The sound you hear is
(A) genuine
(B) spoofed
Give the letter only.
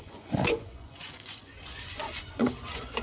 B